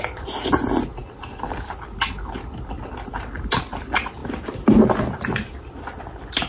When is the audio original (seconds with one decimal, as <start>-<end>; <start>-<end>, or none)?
0.0-6.5